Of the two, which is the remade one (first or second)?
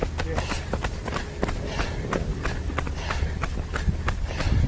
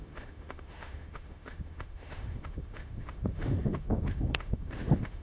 second